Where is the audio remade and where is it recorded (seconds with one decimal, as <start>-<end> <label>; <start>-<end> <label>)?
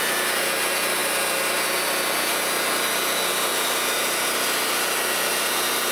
0.0-5.9 recorded